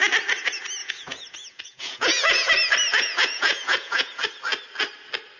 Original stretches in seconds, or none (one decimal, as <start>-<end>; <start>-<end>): 0.0-0.8; 2.5-2.9; 4.2-5.4

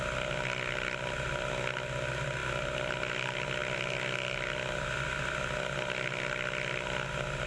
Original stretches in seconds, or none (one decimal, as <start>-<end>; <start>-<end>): 0.0-7.5